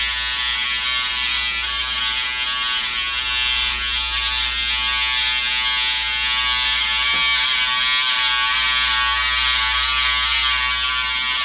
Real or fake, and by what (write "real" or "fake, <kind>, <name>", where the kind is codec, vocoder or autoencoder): real